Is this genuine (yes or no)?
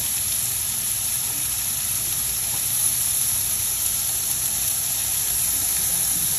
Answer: no